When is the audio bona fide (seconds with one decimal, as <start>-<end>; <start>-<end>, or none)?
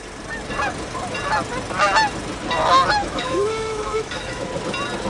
0.0-3.0; 4.5-5.1